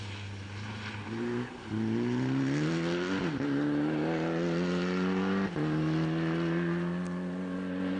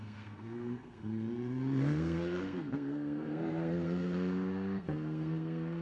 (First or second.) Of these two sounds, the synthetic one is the second